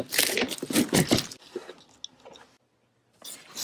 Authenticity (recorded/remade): recorded